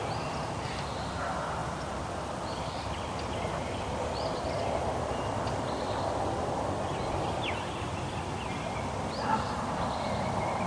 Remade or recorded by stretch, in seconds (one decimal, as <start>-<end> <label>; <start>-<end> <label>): 0.0-10.7 recorded